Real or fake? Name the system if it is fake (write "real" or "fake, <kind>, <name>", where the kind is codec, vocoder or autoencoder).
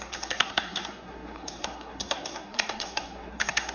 fake, codec, SNAC